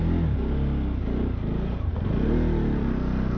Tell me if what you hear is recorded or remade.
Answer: recorded